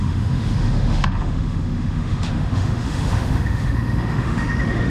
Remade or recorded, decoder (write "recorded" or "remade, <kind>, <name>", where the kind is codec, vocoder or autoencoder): remade, autoencoder, DAC-VAE